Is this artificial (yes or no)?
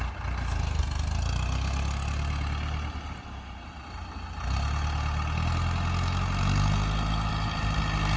no